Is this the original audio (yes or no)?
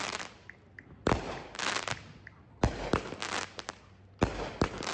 yes